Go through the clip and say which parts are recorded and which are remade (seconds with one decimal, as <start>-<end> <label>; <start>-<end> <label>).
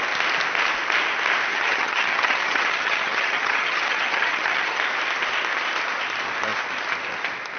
0.0-1.5 recorded; 1.5-4.8 remade; 4.8-7.6 recorded